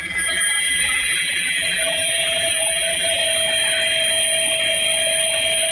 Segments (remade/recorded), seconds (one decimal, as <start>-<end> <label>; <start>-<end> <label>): 0.0-3.2 remade; 3.2-5.7 recorded